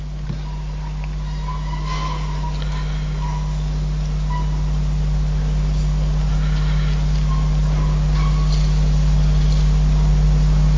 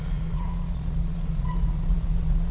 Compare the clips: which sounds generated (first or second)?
second